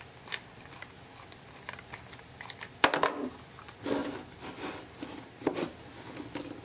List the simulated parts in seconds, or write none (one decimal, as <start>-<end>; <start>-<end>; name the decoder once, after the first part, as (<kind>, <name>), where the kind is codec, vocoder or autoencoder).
none